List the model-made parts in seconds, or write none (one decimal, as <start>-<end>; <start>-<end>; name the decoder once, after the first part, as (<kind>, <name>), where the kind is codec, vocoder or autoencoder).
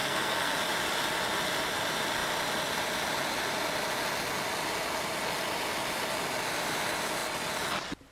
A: 0.0-0.6 (codec, SNAC)